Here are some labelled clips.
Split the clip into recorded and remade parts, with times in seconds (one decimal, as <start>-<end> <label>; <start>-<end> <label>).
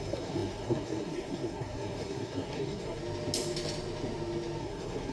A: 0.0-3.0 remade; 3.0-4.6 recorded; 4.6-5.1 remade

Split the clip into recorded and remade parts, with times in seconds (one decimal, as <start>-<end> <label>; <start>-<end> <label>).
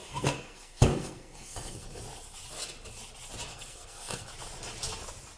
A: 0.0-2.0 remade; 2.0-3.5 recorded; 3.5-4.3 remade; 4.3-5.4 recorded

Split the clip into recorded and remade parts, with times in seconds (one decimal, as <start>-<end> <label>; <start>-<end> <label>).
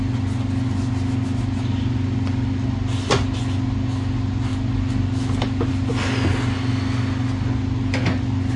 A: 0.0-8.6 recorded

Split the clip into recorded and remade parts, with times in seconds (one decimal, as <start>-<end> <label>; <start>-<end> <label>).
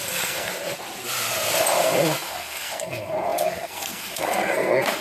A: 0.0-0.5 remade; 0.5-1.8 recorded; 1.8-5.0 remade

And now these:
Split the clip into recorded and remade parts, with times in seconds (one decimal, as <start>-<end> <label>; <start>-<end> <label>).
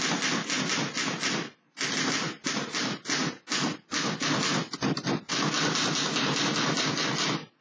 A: 0.0-7.6 recorded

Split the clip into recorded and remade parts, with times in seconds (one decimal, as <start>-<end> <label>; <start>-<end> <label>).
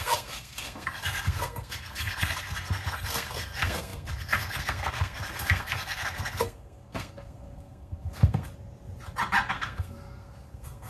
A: 0.0-8.5 remade; 8.5-9.5 recorded; 9.5-10.9 remade